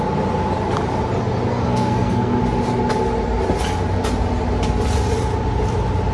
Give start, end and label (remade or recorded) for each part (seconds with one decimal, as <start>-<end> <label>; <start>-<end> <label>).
0.0-1.5 recorded; 1.5-2.4 remade; 2.4-6.1 recorded